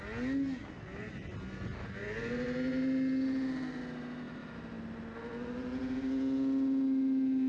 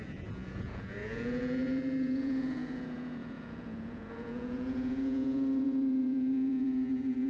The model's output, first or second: second